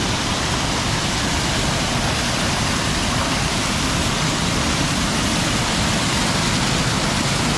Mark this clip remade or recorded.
recorded